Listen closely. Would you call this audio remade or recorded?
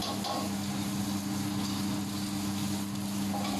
recorded